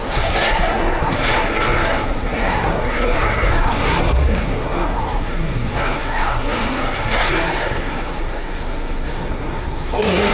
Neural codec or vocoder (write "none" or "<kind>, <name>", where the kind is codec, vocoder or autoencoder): codec, SNAC